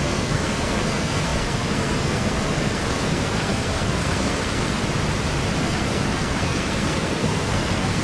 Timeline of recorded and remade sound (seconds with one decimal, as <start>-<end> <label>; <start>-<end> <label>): 0.0-4.8 remade; 4.8-5.6 recorded; 5.6-8.0 remade